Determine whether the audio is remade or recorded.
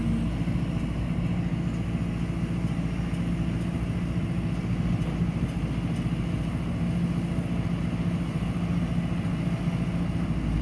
recorded